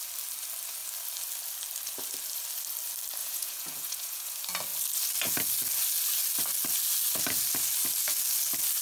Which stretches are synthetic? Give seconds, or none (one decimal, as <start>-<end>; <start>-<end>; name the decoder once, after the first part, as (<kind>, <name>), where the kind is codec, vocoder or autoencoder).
3.2-4.3 (vocoder, Vocos)